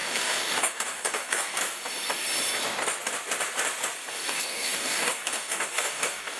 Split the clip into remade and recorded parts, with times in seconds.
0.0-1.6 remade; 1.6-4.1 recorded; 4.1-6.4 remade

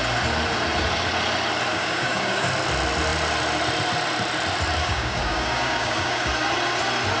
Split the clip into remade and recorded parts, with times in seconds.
0.0-1.7 recorded; 1.7-2.5 remade; 2.5-4.8 recorded; 4.8-6.3 remade; 6.3-7.2 recorded